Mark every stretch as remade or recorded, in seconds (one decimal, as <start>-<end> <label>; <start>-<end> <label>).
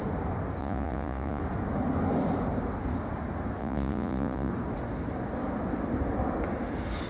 0.0-0.6 recorded; 0.6-1.4 remade; 1.4-3.6 recorded; 3.6-4.5 remade; 4.5-7.1 recorded